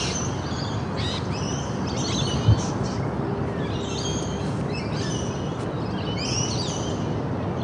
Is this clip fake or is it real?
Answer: real